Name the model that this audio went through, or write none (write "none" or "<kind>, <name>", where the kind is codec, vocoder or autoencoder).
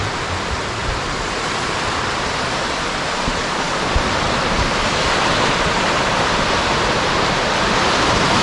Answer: vocoder, BigVGAN v2